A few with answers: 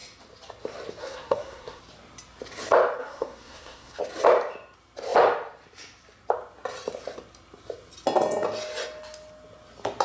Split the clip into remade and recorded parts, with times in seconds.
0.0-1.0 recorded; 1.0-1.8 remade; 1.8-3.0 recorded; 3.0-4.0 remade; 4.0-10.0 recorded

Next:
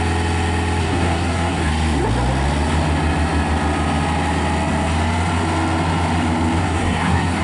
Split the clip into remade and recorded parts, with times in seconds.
0.0-0.8 recorded; 0.8-1.7 remade; 1.7-6.6 recorded; 6.6-7.4 remade

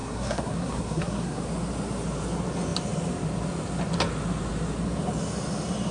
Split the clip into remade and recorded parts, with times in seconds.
0.0-1.4 remade; 1.4-5.9 recorded

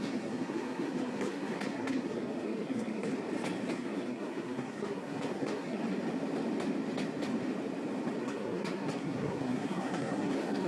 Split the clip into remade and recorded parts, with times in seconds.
0.0-3.1 remade; 3.1-3.7 recorded; 3.7-5.8 remade; 5.8-8.2 recorded; 8.2-10.7 remade

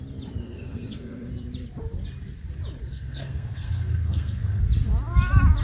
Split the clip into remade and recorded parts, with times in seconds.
0.0-0.4 recorded; 0.4-1.3 remade; 1.3-2.9 recorded; 2.9-4.6 remade; 4.6-5.6 recorded